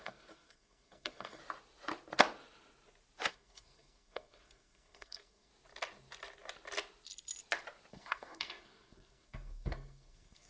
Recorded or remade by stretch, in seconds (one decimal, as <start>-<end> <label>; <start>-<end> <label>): 0.0-1.4 remade; 1.4-3.3 recorded; 3.3-5.5 remade; 5.5-7.9 recorded; 7.9-10.5 remade